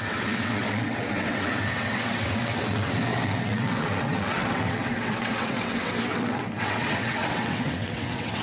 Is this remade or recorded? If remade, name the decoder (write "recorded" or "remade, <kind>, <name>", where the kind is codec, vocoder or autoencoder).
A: remade, vocoder, WaveNeXt